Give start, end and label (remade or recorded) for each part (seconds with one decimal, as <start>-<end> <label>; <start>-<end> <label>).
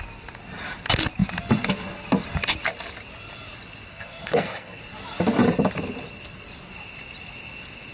0.0-3.9 recorded; 3.9-4.8 remade; 4.8-7.9 recorded